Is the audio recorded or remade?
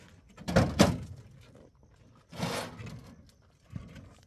recorded